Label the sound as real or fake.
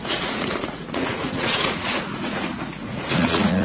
fake